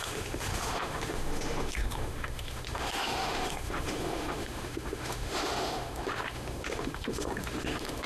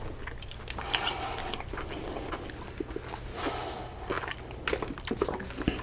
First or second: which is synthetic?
first